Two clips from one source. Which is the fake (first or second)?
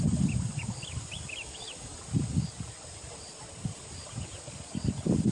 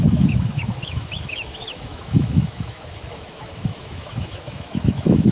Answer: second